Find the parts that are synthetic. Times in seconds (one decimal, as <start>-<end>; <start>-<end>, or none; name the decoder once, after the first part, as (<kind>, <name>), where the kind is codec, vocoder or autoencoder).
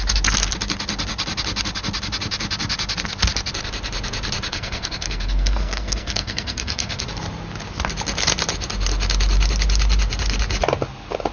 4.5-7.0 (codec, SNAC)